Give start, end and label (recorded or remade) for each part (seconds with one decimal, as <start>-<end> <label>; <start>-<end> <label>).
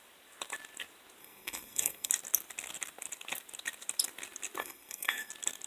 0.0-1.2 recorded; 1.2-2.1 remade; 2.1-4.6 recorded; 4.6-5.3 remade; 5.3-5.7 recorded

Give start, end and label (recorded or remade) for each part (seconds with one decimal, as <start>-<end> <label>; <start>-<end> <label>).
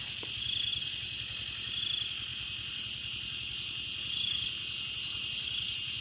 0.0-2.3 recorded; 2.3-6.0 remade